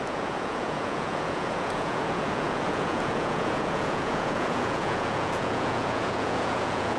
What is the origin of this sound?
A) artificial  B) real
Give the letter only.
A